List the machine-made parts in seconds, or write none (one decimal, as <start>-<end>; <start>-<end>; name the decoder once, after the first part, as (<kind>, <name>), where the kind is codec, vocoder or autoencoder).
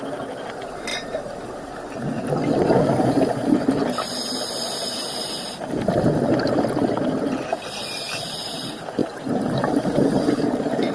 9.0-10.9 (vocoder, BigVGAN v2)